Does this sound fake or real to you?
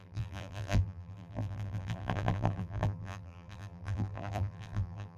fake